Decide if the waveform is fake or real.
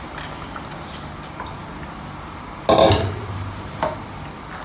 real